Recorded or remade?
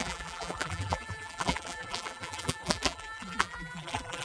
remade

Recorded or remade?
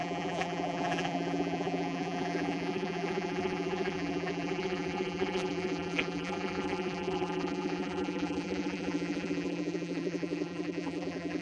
remade